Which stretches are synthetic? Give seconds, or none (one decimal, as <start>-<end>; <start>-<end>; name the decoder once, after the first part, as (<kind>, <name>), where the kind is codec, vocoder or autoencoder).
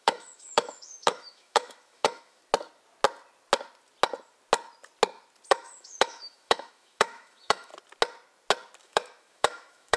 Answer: 0.0-2.4 (autoencoder, DAC-VAE); 5.5-7.7; 8.8-10.0